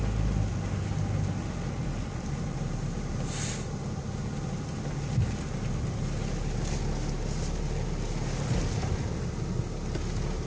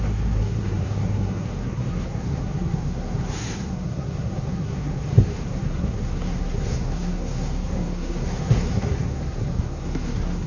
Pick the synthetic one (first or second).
second